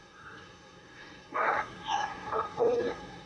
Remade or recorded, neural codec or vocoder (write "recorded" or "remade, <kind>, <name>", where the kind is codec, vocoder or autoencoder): remade, codec, SNAC